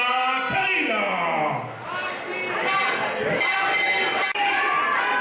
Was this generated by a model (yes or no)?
no